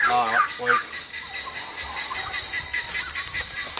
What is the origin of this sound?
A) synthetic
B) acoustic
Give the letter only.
B